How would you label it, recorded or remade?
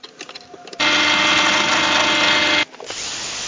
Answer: recorded